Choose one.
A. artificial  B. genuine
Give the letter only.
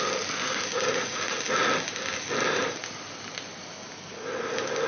B